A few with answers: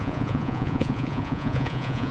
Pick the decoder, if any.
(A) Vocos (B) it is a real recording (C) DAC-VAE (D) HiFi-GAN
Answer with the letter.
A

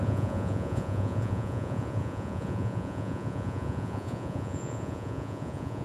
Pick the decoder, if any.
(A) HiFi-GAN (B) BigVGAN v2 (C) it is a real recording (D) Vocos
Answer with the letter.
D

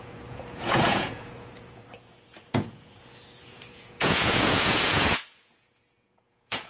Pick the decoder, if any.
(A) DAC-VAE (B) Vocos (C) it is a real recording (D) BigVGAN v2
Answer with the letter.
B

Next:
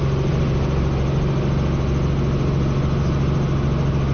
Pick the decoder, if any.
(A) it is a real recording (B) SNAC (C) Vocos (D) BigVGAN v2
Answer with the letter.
A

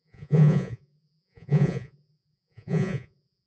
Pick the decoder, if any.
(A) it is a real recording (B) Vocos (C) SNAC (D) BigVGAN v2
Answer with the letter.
B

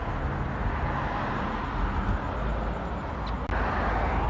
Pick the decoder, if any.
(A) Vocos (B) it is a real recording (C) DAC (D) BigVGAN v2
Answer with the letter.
B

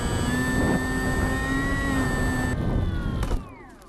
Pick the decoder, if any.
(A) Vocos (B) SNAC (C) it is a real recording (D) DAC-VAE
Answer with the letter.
C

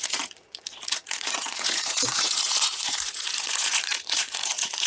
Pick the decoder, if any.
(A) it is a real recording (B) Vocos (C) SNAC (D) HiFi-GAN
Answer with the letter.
B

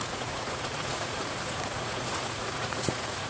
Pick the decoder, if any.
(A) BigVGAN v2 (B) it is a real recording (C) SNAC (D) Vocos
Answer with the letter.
D